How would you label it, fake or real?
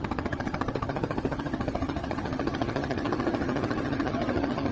fake